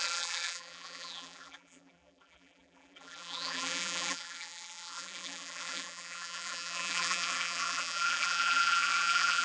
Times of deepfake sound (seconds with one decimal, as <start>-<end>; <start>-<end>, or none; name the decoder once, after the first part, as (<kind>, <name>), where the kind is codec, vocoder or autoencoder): 0.0-9.4 (vocoder, BigVGAN v2)